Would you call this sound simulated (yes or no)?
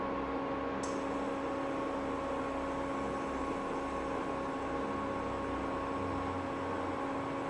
no